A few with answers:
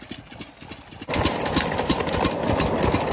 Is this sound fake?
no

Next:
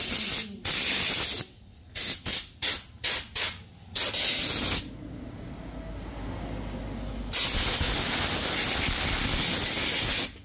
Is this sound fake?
no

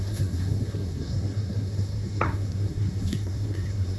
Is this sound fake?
yes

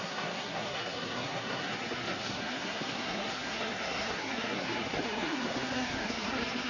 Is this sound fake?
yes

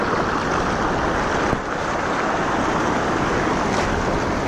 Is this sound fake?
no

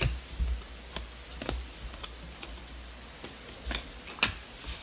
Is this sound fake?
no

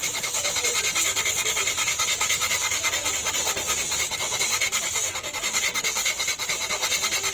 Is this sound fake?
no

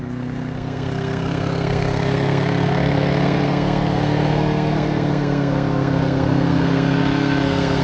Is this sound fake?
yes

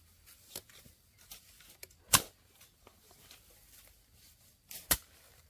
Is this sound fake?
no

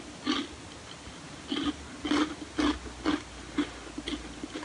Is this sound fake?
no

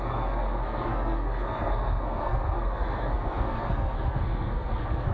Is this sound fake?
yes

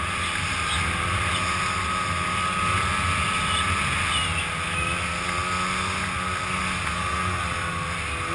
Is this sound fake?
no